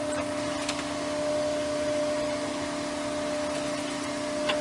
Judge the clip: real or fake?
real